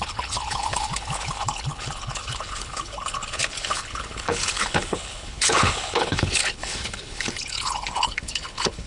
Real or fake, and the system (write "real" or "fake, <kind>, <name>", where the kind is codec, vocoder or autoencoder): fake, codec, HILCodec